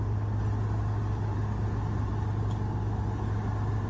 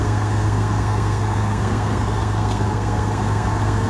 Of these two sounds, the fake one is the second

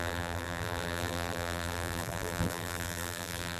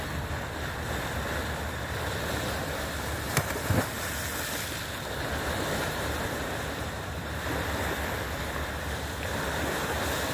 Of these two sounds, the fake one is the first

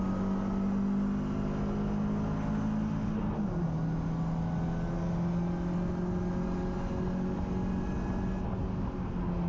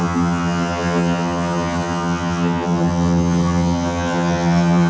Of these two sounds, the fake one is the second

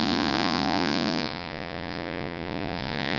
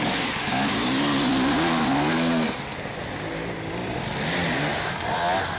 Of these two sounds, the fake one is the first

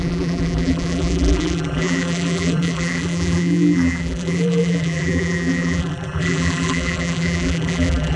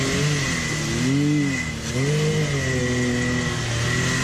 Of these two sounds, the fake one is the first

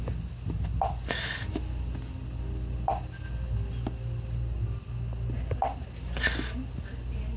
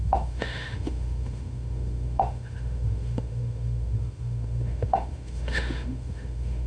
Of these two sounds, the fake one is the second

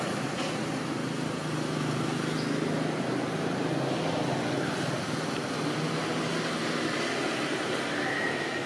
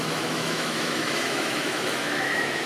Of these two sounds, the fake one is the second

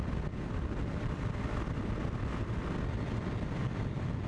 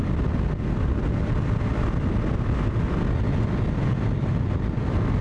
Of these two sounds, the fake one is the first